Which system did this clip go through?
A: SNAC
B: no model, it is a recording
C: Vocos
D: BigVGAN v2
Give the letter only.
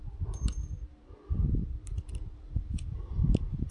D